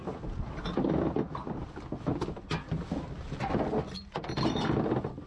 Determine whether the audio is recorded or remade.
recorded